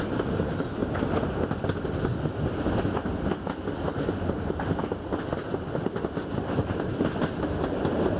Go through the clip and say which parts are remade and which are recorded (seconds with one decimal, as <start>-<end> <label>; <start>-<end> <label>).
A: 0.0-8.2 recorded